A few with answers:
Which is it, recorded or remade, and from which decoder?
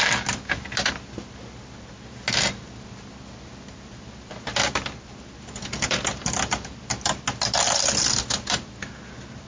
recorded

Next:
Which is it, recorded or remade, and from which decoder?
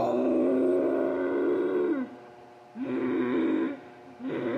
recorded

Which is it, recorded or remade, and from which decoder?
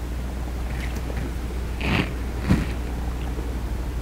recorded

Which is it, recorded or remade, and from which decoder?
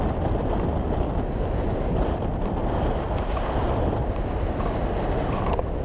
recorded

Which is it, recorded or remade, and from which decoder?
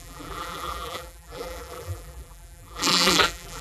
remade, vocoder, BigVGAN v2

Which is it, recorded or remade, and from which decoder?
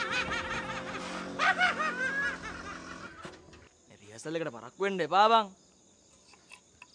recorded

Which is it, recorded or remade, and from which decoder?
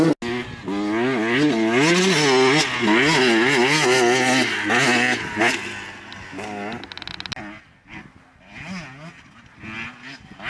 recorded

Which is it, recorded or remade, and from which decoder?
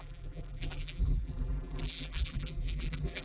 remade, vocoder, BigVGAN v2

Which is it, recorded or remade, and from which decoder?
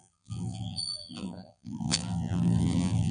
remade, vocoder, BigVGAN v2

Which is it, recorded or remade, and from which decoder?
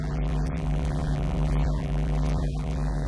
remade, vocoder, BigVGAN v2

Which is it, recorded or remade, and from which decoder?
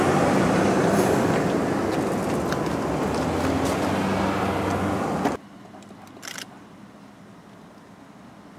recorded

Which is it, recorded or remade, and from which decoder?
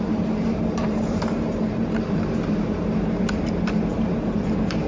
remade, vocoder, BigVGAN v2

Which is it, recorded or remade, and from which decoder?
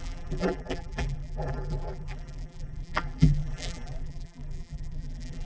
remade, vocoder, BigVGAN v2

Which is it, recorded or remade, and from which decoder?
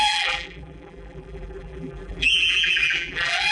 remade, vocoder, BigVGAN v2